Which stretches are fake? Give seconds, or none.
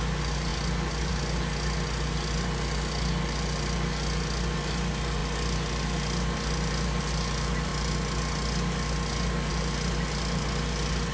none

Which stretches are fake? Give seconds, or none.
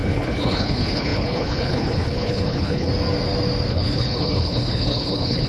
0.0-2.9 (codec, HILCodec); 3.7-5.5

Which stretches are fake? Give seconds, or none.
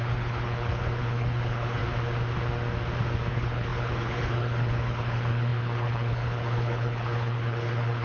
0.0-1.8 (codec, HILCodec); 3.3-8.0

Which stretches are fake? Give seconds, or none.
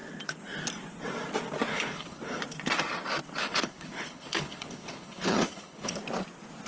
1.7-2.4 (codec, HILCodec); 3.4-6.0